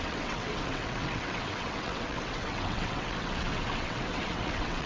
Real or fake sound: fake